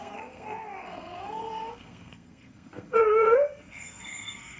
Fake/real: fake